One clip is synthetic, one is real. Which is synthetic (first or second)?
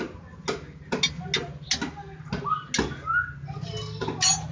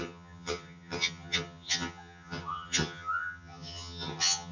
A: second